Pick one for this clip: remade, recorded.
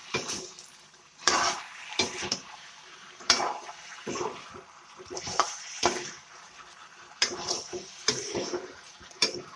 remade